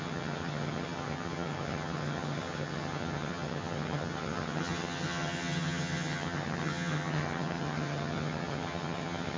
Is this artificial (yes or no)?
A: yes